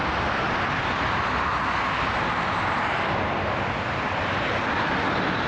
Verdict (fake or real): real